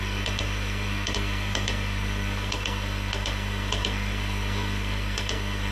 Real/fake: fake